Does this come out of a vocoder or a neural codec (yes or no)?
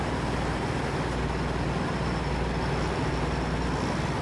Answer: no